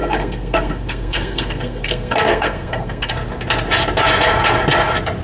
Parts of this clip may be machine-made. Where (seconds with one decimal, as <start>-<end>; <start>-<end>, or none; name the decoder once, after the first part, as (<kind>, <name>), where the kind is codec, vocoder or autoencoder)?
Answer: 0.0-3.1 (codec, SNAC)